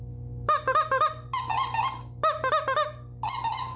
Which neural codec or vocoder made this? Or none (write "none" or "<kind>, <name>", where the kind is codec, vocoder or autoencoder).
none